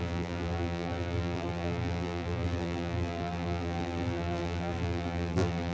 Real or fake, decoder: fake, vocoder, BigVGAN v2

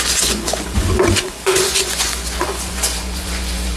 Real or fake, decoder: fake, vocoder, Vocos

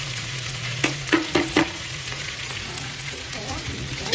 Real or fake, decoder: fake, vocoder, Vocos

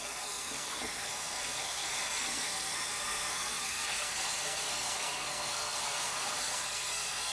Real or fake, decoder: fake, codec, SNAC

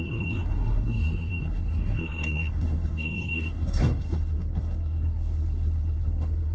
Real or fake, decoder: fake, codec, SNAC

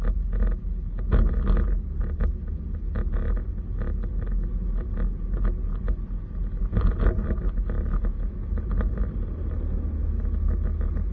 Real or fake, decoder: real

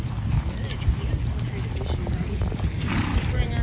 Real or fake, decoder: real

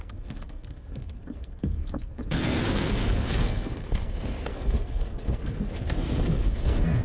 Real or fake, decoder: fake, codec, SNAC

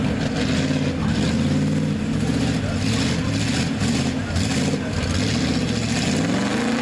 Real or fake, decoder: real